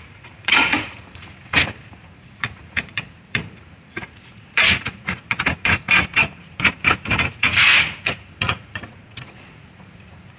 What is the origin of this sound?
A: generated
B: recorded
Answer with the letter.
A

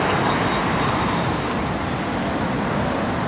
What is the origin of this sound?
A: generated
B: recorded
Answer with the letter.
B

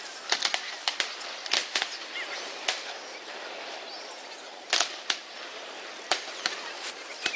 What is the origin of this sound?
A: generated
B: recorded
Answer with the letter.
B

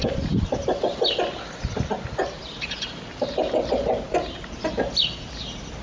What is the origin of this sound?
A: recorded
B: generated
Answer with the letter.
A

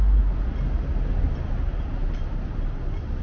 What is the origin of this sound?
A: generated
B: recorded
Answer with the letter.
B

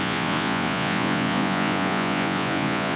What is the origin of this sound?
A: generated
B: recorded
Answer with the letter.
A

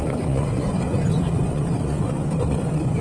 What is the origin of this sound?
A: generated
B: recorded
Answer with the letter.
A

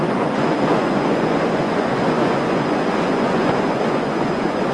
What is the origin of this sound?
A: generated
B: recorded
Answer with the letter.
A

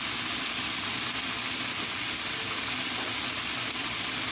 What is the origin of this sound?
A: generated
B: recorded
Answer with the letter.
B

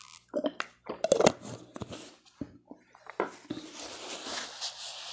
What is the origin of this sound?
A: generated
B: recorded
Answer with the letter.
B